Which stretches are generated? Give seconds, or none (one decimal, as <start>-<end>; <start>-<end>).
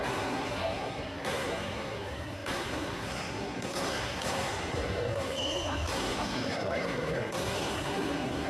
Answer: 0.0-8.5